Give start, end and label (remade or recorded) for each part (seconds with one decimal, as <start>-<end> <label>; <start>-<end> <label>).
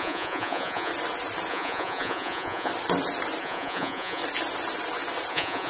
0.0-0.9 remade; 0.9-1.5 recorded; 1.5-2.7 remade; 2.7-3.4 recorded; 3.4-4.2 remade; 4.2-5.3 recorded; 5.3-5.7 remade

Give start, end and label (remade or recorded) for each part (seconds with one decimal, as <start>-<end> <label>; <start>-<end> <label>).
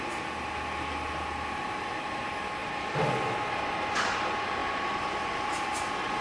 0.0-6.2 recorded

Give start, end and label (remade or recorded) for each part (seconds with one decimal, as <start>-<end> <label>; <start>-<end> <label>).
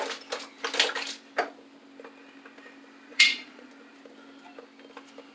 0.0-3.1 recorded; 3.1-3.7 remade; 3.7-5.3 recorded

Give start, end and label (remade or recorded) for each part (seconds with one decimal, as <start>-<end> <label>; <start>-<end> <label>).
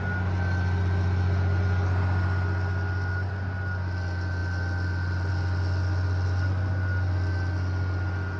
0.0-8.4 recorded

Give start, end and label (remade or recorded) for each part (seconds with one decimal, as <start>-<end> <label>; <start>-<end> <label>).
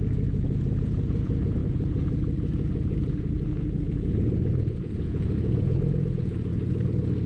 0.0-6.5 remade; 6.5-7.3 recorded